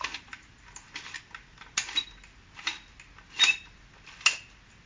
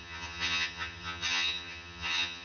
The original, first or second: first